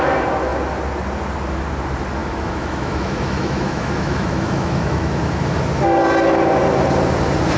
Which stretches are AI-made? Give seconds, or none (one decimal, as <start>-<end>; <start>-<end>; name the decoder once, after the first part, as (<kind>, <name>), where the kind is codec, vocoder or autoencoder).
2.2-5.6 (autoencoder, DAC-VAE)